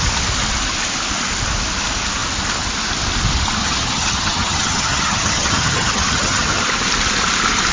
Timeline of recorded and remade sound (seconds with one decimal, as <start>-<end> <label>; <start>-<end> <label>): 0.0-3.6 recorded; 3.6-6.6 remade; 6.6-7.7 recorded